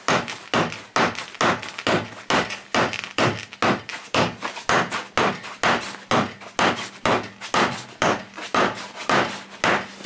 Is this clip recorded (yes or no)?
yes